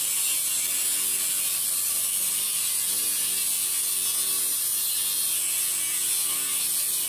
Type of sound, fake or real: real